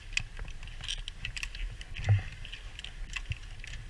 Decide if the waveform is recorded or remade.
recorded